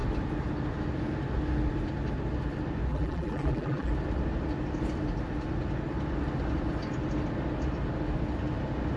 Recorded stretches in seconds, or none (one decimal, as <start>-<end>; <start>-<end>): 0.0-2.9; 3.9-9.0